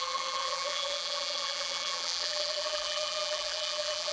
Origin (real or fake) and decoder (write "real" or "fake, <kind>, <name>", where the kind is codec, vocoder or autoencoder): fake, vocoder, BigVGAN v2